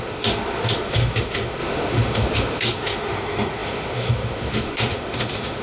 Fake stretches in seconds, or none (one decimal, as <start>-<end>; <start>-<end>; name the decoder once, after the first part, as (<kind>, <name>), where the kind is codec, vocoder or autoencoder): 0.0-5.6 (autoencoder, DAC-VAE)